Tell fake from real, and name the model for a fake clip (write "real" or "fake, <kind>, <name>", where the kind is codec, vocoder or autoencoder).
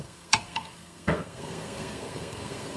fake, codec, SNAC